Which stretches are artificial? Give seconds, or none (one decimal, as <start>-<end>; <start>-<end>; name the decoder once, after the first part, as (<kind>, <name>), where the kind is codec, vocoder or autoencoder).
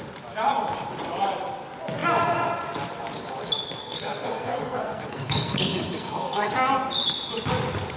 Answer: 3.8-6.5 (codec, SNAC)